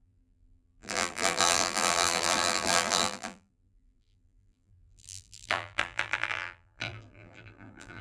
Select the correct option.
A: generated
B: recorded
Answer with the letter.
A